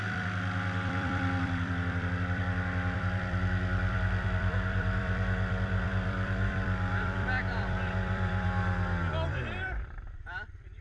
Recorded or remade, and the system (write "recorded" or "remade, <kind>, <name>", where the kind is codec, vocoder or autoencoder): remade, vocoder, BigVGAN v2